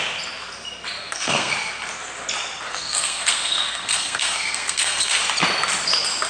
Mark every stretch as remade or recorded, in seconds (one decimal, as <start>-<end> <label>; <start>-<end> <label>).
0.0-1.0 recorded; 1.0-1.5 remade; 1.5-2.7 recorded; 2.7-5.2 remade; 5.2-6.3 recorded